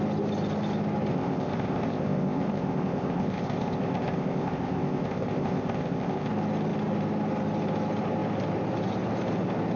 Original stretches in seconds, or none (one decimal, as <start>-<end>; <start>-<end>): 0.0-1.1; 6.3-9.8